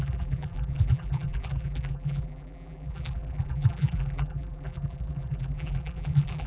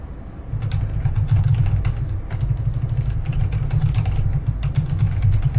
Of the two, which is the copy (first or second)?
first